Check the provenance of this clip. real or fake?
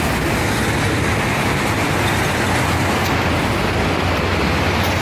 real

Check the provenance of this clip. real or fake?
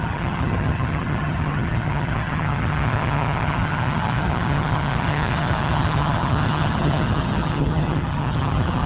fake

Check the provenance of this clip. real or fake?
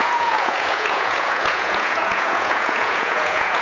fake